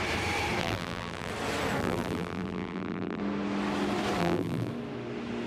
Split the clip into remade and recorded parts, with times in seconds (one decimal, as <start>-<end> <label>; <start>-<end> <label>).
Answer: 0.0-0.6 recorded; 0.6-1.3 remade; 1.3-1.8 recorded; 1.8-3.2 remade; 3.2-4.2 recorded; 4.2-4.7 remade; 4.7-5.5 recorded